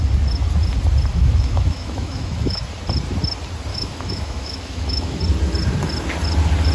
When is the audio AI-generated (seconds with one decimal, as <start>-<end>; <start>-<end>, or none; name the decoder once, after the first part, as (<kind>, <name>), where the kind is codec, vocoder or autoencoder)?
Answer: 1.1-2.6 (autoencoder, DAC-VAE); 3.7-5.2